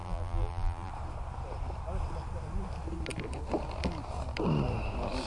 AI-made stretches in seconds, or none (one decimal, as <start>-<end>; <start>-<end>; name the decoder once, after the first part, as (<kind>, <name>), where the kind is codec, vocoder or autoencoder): 0.0-0.9 (vocoder, BigVGAN v2)